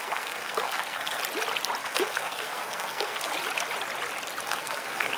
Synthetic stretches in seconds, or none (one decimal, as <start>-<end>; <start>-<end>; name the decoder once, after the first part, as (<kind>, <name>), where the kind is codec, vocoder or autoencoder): 0.0-1.2 (codec, SNAC); 1.8-3.3; 4.4-5.2